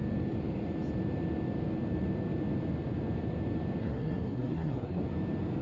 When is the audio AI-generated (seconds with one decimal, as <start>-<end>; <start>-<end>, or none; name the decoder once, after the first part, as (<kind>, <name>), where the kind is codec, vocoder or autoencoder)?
3.8-5.0 (codec, SNAC)